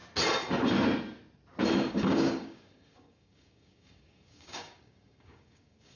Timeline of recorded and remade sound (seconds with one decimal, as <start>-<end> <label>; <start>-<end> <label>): 0.0-1.9 recorded; 1.9-6.0 remade